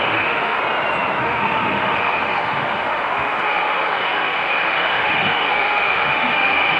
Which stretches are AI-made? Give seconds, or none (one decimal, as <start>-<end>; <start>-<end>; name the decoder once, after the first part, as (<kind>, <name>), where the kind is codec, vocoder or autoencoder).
0.0-0.6 (autoencoder, DAC-VAE); 1.2-6.8